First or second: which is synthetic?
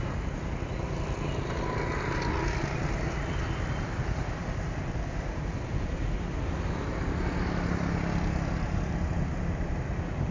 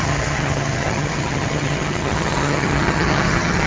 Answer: second